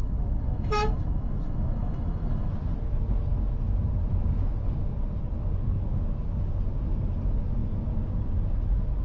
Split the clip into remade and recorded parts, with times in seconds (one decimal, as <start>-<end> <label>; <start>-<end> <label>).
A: 0.0-2.5 remade; 2.5-9.0 recorded